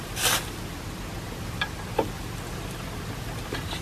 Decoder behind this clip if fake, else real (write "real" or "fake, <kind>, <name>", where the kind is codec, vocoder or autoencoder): real